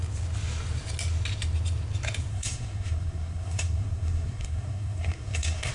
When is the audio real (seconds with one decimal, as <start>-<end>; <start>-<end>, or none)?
0.0-2.3